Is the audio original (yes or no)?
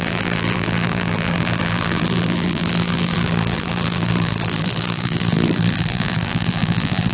no